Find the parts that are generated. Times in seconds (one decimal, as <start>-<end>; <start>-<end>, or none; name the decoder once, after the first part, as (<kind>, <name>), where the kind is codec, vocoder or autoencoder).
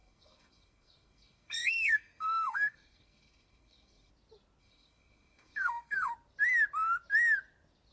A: 0.0-4.1 (codec, SNAC); 4.6-6.1